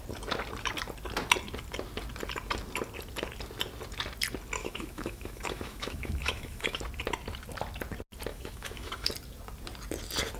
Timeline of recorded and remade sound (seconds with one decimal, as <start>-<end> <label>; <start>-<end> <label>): 0.0-4.6 recorded; 4.6-6.8 remade; 6.8-8.3 recorded; 8.3-9.1 remade; 9.1-10.4 recorded